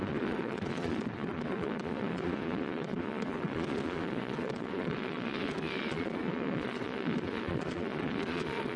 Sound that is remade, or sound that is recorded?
remade